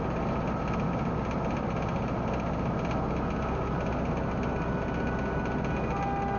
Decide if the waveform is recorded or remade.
recorded